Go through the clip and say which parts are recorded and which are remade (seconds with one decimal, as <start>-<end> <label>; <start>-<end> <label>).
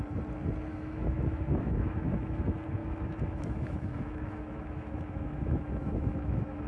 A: 0.0-0.7 recorded; 0.7-2.4 remade; 2.4-2.8 recorded; 2.8-6.7 remade